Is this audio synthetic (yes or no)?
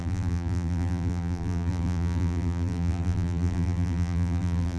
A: yes